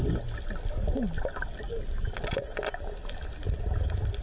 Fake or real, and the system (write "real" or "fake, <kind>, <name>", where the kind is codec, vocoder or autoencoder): real